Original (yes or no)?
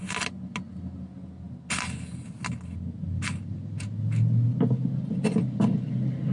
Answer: yes